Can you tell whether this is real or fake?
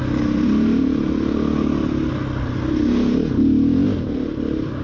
real